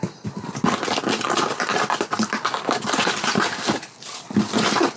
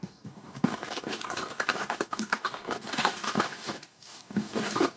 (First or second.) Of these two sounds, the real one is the first